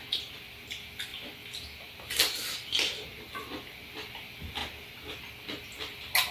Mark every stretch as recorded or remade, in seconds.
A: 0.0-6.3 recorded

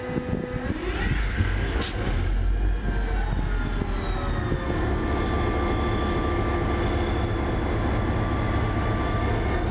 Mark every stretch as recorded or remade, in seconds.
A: 0.0-1.2 recorded; 1.2-1.8 remade; 1.8-9.7 recorded

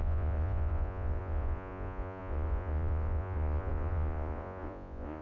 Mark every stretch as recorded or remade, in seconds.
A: 0.0-5.2 remade

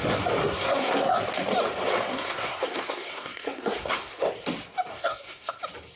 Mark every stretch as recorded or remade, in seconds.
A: 0.0-0.4 recorded; 0.4-1.2 remade; 1.2-2.1 recorded; 2.1-4.1 remade; 4.1-4.9 recorded; 4.9-5.6 remade; 5.6-6.0 recorded

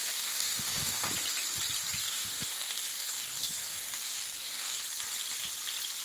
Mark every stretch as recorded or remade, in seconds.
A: 0.0-1.1 remade; 1.1-2.0 recorded; 2.0-4.8 remade; 4.8-6.0 recorded

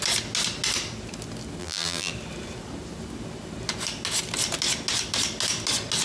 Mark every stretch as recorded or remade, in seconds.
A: 0.0-1.6 recorded; 1.6-2.1 remade; 2.1-6.0 recorded

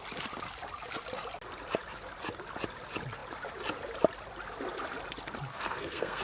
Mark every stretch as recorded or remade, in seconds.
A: 0.0-5.5 recorded; 5.5-6.2 remade